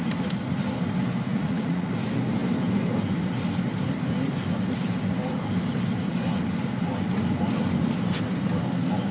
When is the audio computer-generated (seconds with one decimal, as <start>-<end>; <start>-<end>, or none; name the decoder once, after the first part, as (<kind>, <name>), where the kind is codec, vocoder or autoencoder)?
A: 1.3-1.9 (vocoder, Vocos)